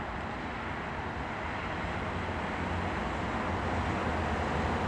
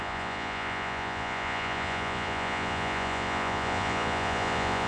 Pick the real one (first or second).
first